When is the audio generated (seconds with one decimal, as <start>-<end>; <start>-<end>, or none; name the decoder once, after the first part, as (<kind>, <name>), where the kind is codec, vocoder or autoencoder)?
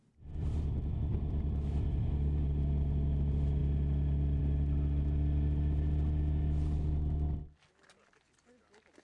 none